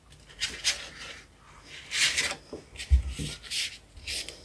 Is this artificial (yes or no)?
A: no